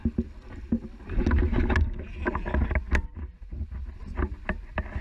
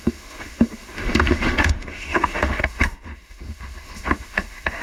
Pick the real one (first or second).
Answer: first